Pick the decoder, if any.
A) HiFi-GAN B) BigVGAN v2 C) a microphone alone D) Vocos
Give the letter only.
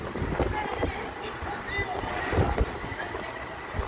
C